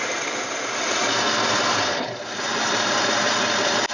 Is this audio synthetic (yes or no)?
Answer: no